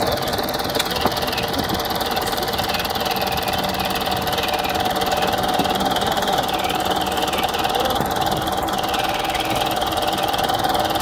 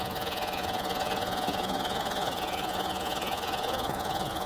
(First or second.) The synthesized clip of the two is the second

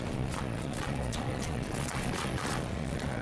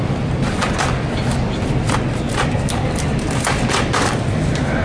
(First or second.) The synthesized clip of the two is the first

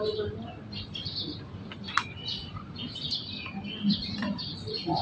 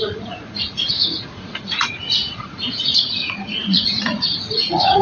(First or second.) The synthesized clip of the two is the second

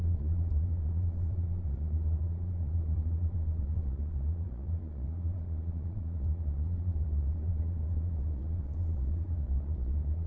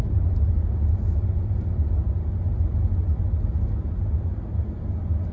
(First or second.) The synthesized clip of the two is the first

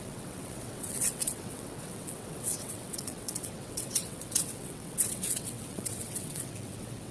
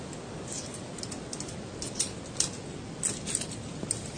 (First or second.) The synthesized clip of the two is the first